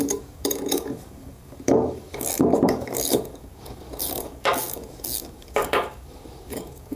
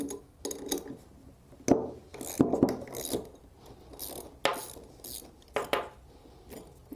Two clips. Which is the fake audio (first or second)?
first